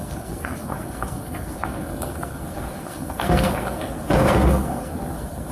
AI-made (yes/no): yes